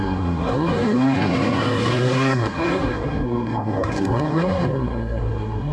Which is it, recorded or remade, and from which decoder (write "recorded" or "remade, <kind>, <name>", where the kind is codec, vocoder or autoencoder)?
remade, codec, SNAC